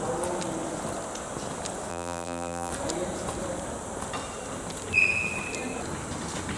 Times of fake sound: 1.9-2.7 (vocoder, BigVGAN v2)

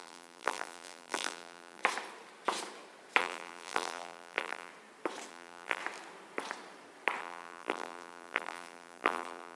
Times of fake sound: 0.0-1.8 (vocoder, BigVGAN v2); 3.2-4.7; 5.3-5.8; 7.2-9.6

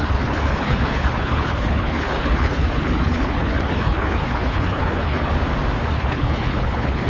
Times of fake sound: 0.0-5.3 (codec, HILCodec); 5.9-7.1